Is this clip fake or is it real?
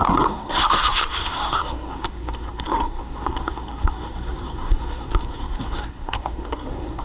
fake